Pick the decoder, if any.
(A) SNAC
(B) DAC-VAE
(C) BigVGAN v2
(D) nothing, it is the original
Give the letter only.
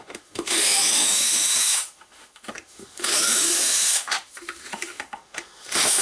B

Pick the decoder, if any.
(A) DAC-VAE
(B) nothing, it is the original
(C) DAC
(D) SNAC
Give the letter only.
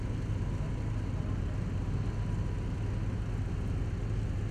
B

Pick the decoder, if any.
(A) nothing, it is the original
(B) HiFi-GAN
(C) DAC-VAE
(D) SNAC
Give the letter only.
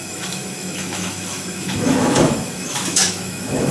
C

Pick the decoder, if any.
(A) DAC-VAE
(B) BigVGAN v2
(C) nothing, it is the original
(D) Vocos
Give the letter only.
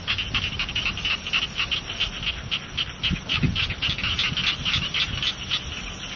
C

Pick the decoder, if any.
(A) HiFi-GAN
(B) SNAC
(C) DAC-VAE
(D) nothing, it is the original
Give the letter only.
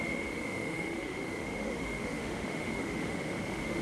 C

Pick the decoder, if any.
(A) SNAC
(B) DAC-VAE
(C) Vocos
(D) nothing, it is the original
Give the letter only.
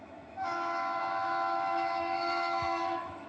B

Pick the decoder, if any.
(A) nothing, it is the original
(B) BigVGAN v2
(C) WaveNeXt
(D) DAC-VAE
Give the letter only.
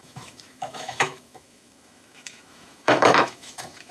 D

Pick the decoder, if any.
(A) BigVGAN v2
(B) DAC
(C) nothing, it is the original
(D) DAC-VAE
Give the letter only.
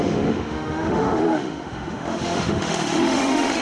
D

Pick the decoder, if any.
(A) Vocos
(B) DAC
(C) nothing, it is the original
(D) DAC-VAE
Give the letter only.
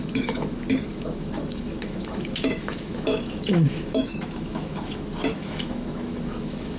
D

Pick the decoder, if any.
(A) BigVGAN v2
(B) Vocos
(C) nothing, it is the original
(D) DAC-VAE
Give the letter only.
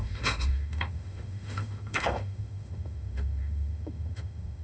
D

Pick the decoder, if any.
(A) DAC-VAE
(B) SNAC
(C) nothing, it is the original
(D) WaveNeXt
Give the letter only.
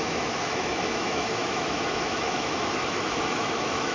A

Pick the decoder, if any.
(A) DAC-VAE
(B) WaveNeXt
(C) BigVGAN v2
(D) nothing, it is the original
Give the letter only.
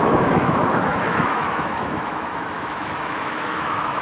A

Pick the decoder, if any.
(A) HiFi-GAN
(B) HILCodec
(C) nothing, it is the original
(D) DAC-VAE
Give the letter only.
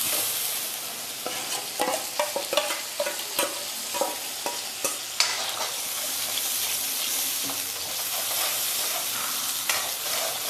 C